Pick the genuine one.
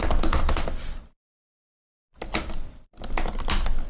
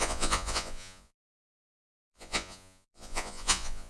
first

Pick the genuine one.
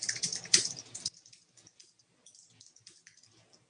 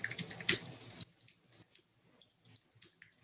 second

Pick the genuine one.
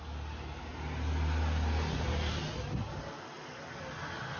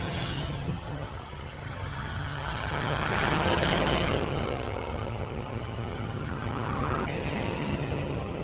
first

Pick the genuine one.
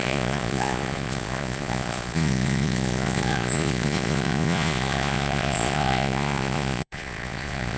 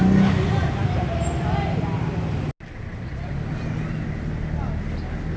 second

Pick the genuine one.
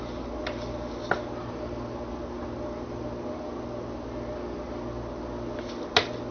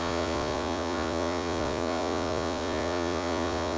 first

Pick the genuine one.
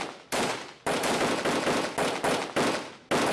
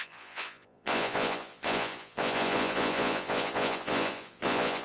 first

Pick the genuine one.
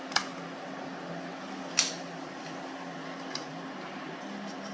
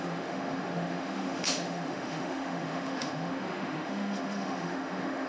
first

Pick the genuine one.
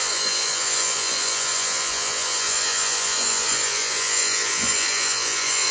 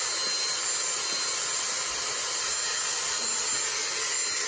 second